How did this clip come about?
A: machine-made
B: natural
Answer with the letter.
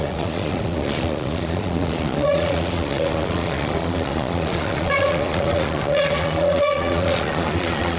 A